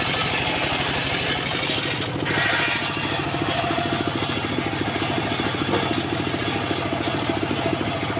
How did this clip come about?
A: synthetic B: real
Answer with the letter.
B